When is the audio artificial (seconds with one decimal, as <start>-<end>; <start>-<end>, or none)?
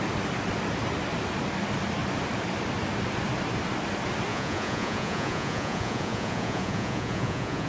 4.3-7.7